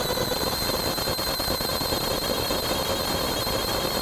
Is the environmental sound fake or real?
fake